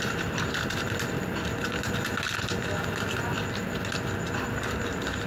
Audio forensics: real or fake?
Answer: real